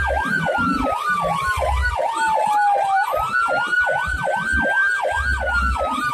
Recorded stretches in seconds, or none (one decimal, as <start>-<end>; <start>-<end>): 0.0-6.1